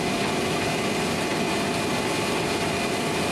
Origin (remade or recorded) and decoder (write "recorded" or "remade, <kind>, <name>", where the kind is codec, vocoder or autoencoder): recorded